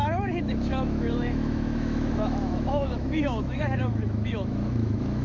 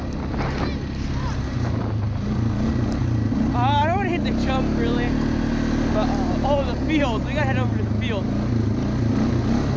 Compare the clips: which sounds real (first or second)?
second